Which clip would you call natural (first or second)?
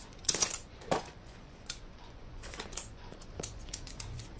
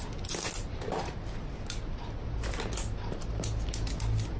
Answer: second